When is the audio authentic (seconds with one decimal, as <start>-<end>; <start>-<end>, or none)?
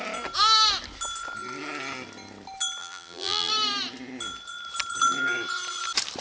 0.0-2.8; 3.5-6.2